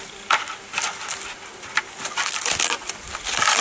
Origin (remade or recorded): recorded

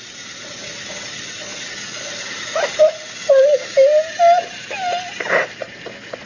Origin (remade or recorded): recorded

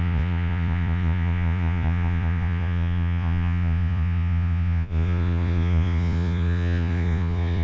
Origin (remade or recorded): remade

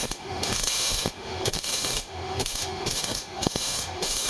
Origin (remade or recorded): remade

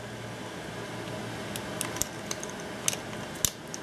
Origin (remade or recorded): recorded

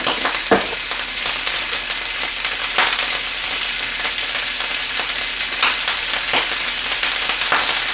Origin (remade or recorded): recorded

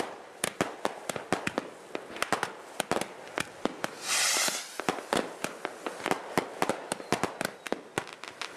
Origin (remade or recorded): recorded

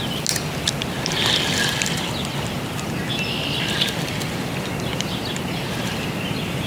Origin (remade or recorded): recorded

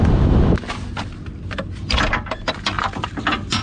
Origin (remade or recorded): recorded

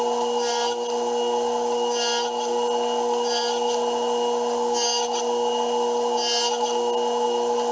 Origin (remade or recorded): recorded